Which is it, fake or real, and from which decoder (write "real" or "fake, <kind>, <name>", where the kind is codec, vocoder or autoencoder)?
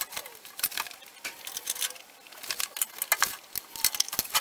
real